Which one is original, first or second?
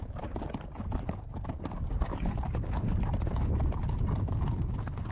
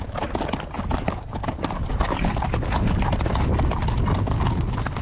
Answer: second